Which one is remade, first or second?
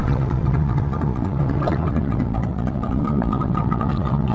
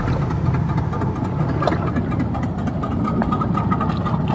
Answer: first